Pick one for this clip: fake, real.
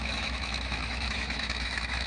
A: fake